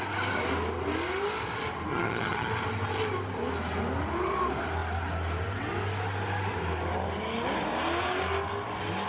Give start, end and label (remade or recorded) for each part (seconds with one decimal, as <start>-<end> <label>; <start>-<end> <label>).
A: 0.0-1.9 recorded; 1.9-2.5 remade; 2.5-9.1 recorded